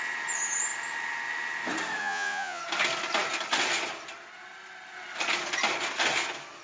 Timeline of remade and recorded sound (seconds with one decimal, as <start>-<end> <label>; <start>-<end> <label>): 0.0-2.0 recorded; 2.0-2.6 remade; 2.6-6.6 recorded